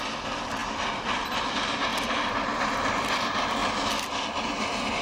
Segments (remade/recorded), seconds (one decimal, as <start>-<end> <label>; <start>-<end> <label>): 0.0-5.0 recorded